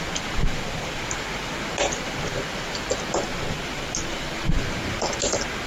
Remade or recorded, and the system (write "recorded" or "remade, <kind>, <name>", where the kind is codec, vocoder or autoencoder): recorded